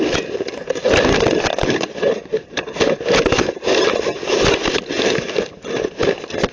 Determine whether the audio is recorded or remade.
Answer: recorded